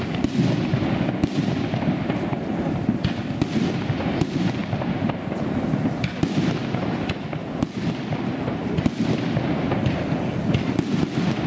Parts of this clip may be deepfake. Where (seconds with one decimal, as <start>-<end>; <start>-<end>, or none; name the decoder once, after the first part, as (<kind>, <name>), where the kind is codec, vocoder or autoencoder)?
none